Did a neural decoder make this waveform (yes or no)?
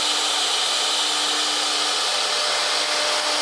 no